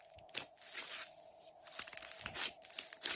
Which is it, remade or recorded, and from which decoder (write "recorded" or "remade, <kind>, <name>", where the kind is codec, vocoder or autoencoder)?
recorded